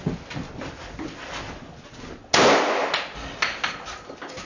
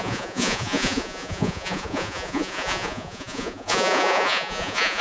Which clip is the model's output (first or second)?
second